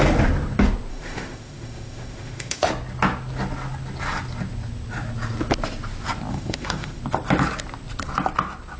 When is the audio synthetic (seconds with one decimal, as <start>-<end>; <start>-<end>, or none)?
0.9-2.7; 6.3-7.0